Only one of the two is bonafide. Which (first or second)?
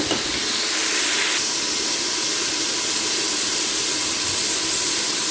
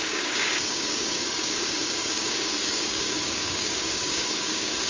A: first